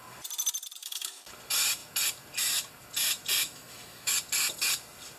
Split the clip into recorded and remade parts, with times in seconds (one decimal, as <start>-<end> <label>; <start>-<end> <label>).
0.0-0.8 recorded; 0.8-1.3 remade; 1.3-3.4 recorded; 3.4-4.1 remade; 4.1-5.2 recorded